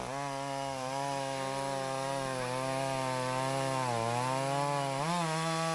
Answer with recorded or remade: recorded